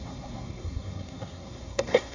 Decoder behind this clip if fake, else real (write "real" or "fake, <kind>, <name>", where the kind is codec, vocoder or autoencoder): fake, codec, SNAC